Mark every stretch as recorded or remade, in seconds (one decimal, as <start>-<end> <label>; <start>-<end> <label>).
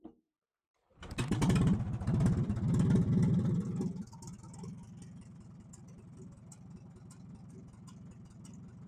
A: 0.0-8.9 recorded